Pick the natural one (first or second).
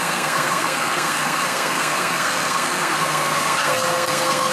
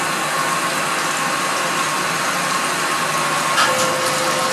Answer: second